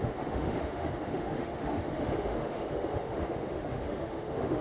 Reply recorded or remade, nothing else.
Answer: remade